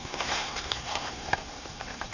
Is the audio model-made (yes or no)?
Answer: yes